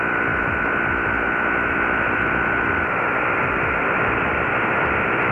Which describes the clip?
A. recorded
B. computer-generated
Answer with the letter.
A